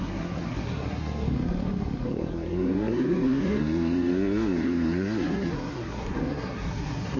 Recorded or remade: remade